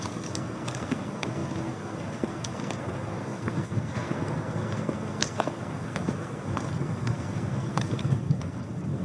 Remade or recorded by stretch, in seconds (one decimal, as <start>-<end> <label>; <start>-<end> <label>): 0.0-9.0 remade